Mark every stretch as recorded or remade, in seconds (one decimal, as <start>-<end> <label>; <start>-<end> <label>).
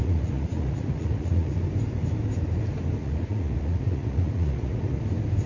0.0-1.6 remade; 1.6-3.0 recorded; 3.0-5.0 remade; 5.0-5.5 recorded